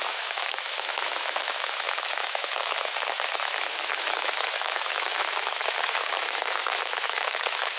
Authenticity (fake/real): fake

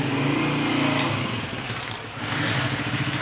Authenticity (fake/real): real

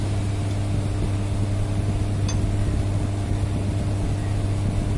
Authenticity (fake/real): real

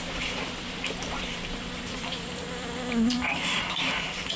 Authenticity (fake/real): fake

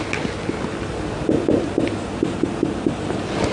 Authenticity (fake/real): real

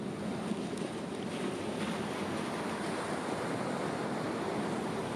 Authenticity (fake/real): real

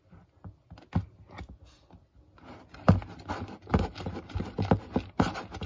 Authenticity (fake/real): real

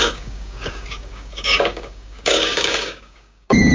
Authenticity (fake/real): fake